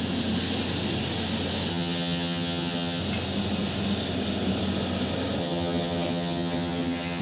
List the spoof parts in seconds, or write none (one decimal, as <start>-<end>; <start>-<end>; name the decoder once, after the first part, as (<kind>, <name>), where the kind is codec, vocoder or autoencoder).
1.7-3.0 (vocoder, HiFi-GAN); 5.4-7.2